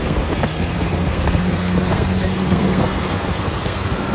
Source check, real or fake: fake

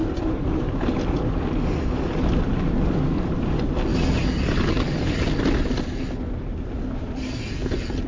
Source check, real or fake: real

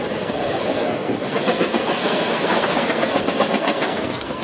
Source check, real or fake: fake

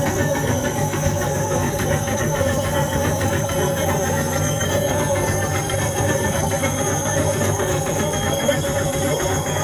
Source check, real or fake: fake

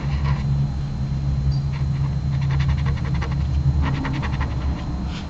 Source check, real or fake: real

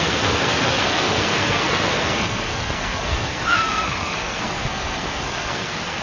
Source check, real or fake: fake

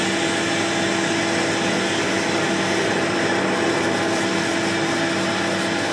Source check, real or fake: real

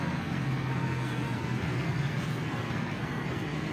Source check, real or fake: fake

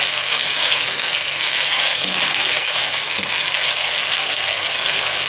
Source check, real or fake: fake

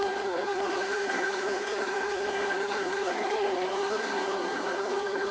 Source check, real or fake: fake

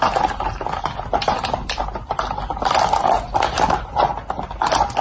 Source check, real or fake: real